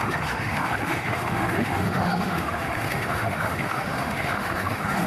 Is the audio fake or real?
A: fake